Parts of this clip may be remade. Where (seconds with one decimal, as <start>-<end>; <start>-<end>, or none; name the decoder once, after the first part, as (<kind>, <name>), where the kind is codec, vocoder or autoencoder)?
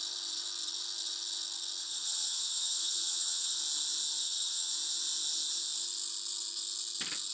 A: 1.8-3.6 (vocoder, HiFi-GAN); 4.2-4.7